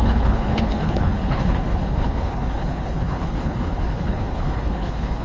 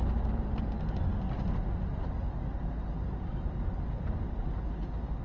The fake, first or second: first